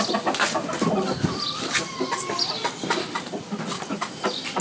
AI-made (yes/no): no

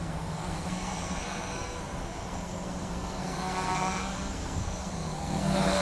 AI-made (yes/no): yes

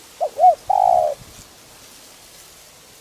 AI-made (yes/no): no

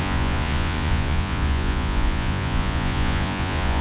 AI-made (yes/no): yes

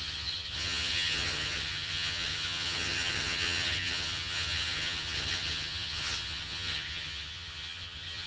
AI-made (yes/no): yes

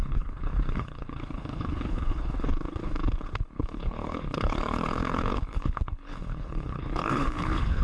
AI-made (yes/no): yes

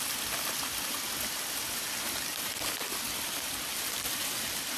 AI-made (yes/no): no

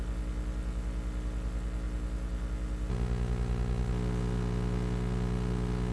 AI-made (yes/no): no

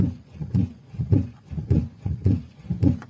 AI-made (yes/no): yes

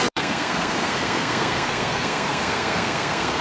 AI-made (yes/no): yes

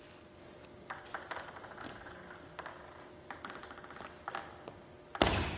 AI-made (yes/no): no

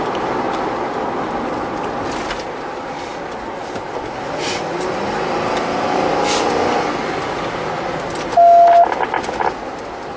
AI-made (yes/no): no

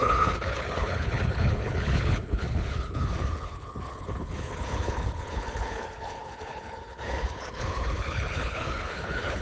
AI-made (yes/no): yes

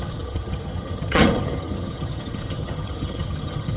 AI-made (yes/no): yes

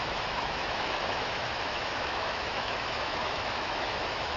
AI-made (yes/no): yes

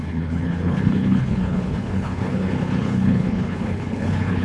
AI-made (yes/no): yes